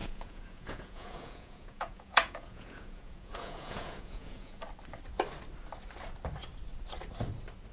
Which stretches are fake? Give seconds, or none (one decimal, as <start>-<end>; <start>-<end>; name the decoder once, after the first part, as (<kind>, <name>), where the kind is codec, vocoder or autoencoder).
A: 0.0-4.6 (vocoder, Vocos)